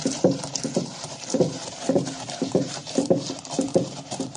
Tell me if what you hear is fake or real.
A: fake